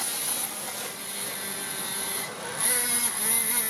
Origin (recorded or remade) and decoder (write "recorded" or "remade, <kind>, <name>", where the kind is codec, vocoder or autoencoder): recorded